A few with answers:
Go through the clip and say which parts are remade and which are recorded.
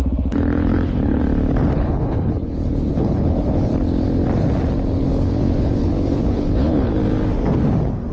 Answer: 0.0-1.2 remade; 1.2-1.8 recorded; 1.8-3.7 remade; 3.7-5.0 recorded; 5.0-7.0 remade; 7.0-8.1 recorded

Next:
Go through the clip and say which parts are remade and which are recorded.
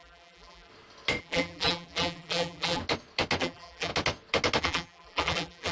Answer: 0.0-0.7 remade; 0.7-1.2 recorded; 1.2-2.8 remade; 2.8-3.4 recorded; 3.4-3.9 remade; 3.9-4.6 recorded; 4.6-5.7 remade